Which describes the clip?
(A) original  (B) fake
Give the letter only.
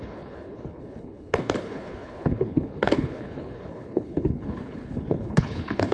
B